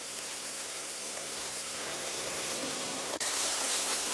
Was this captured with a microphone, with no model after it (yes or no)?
no